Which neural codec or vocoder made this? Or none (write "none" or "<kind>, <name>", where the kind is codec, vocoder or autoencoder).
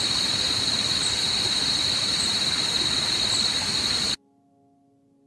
none